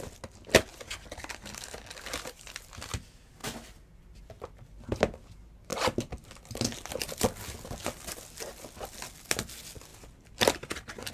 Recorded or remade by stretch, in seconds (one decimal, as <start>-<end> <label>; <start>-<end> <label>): 0.0-9.9 recorded; 9.9-11.1 remade